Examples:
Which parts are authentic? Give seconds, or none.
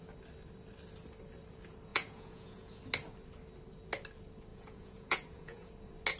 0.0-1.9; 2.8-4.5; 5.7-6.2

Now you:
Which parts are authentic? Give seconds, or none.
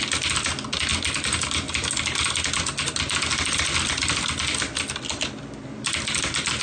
0.0-6.6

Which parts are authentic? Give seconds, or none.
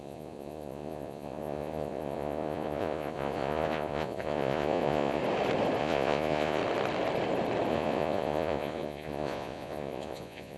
5.2-5.8; 6.6-7.7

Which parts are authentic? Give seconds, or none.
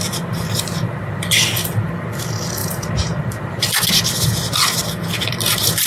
0.0-5.9